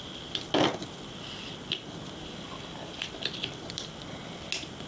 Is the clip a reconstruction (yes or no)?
no